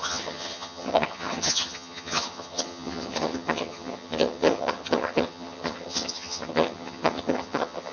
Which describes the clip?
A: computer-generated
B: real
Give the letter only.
A